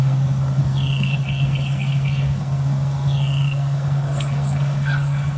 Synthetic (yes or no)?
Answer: yes